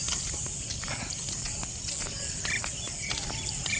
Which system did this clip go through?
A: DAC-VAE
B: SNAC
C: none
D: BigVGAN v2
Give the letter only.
C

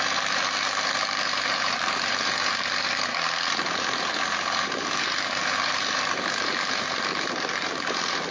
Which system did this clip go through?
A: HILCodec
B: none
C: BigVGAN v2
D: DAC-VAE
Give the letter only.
C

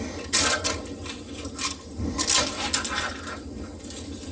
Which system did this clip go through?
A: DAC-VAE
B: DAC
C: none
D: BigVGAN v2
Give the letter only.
C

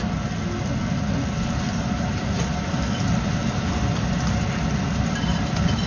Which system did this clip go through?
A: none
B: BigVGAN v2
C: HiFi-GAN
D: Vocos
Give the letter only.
A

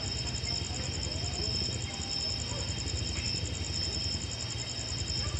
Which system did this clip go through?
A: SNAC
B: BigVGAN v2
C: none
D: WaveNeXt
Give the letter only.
C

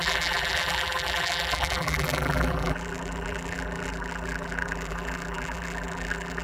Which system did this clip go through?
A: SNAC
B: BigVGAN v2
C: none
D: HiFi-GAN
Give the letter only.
B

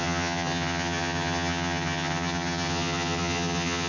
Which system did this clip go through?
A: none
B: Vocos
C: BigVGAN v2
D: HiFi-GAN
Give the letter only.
D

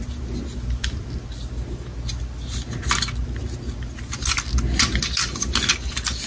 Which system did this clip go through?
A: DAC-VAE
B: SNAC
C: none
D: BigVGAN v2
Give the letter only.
C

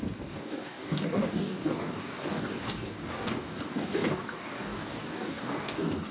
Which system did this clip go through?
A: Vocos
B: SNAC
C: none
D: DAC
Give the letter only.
D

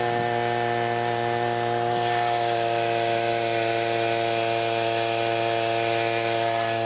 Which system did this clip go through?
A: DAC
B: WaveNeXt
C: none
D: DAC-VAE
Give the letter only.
C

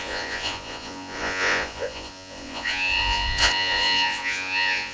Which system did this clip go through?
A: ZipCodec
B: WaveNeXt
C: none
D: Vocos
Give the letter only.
D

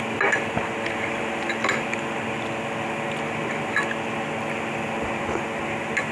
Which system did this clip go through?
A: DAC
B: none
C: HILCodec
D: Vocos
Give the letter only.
B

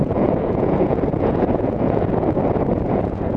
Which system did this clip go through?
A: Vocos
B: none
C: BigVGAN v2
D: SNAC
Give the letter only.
A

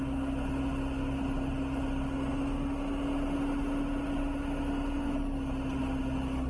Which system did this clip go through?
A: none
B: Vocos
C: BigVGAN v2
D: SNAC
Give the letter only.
A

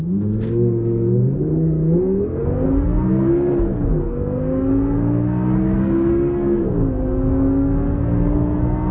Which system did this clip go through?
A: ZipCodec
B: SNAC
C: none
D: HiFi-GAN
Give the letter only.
B